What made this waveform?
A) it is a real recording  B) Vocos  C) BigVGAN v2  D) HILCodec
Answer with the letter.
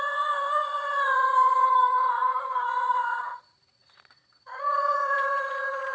B